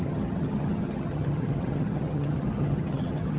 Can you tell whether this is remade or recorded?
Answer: remade